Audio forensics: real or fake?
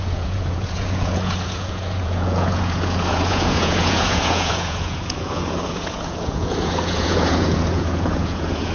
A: fake